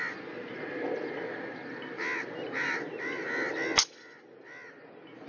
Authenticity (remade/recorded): recorded